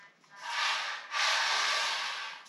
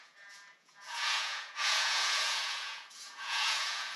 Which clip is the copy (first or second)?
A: second